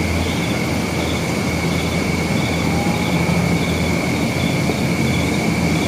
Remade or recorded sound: recorded